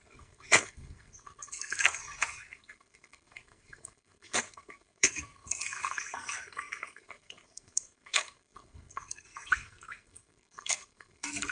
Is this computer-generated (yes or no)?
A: yes